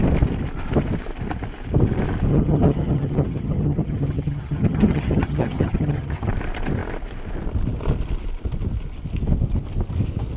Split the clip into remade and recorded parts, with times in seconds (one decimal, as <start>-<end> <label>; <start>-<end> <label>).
0.0-2.3 recorded; 2.3-6.3 remade; 6.3-10.4 recorded